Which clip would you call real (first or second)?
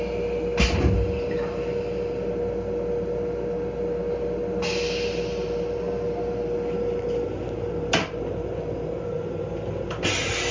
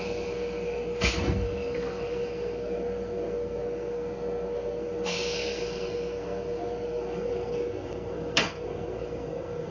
first